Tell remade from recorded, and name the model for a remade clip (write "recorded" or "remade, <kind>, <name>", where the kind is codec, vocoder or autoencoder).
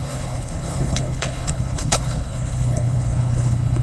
remade, codec, HILCodec